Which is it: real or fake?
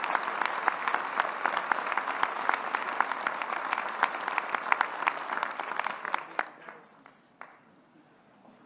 real